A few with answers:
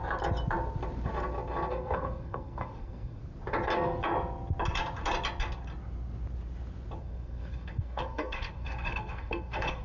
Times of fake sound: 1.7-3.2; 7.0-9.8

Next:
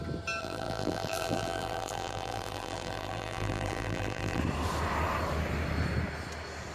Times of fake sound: 0.4-4.4

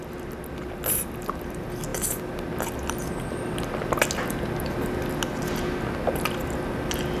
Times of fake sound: none

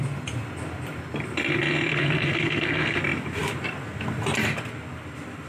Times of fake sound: 1.9-3.0

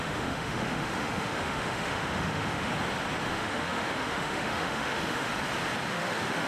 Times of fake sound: 0.0-2.7; 3.3-5.3; 5.9-6.5

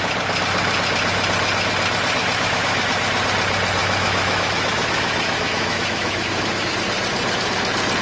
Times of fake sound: 2.2-2.9; 3.8-6.7